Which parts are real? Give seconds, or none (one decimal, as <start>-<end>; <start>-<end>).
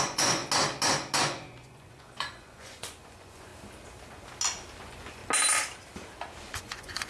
0.4-1.2; 3.5-4.8; 5.2-6.4